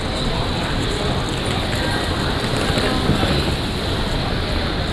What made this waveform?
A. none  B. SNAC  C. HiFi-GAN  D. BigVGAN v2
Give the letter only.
A